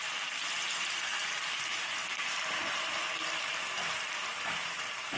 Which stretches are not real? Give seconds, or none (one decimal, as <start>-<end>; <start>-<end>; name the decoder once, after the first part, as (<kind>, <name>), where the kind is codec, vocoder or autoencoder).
none